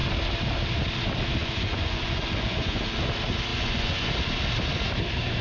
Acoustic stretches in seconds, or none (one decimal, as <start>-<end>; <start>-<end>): 0.0-1.4; 2.8-3.5; 4.1-5.4